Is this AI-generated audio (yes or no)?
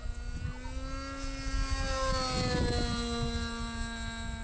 no